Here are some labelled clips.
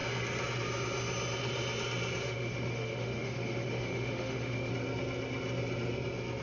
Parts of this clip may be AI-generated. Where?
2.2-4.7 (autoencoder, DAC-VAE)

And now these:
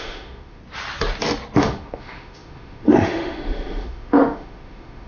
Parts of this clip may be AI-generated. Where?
0.0-0.6 (autoencoder, DAC-VAE); 1.6-5.1

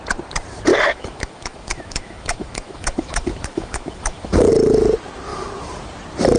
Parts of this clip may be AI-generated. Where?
0.7-4.5 (autoencoder, DAC-VAE)